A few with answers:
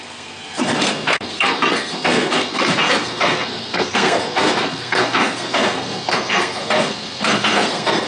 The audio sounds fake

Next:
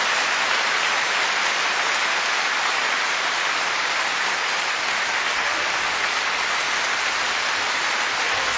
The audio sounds real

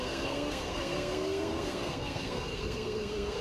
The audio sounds fake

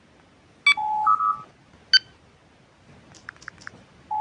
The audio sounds real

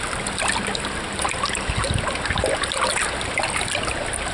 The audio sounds real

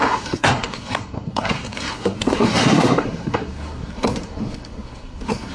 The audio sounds fake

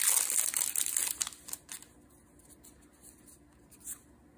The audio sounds real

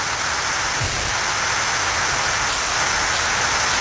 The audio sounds real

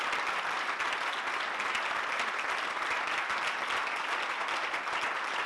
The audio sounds real